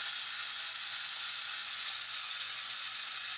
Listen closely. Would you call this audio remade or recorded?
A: remade